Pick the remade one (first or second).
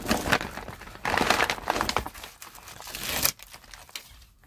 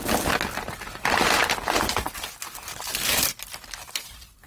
second